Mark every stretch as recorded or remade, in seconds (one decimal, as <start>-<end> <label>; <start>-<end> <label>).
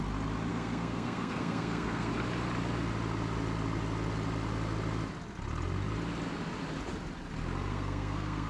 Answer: 0.0-0.5 recorded; 0.5-2.1 remade; 2.1-7.7 recorded; 7.7-8.5 remade